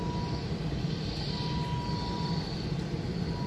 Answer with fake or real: real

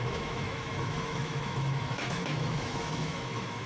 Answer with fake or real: fake